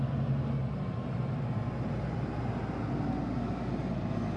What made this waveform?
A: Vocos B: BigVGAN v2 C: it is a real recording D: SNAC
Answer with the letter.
C